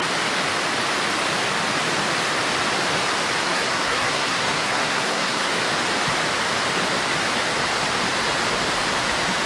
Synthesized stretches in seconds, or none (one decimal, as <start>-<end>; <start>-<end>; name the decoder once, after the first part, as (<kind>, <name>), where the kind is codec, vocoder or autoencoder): 3.4-5.5 (codec, SNAC)